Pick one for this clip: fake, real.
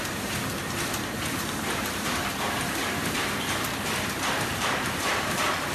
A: fake